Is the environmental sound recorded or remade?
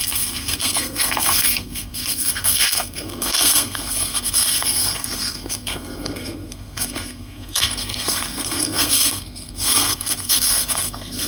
remade